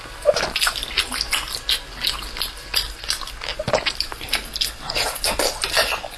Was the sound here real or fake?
real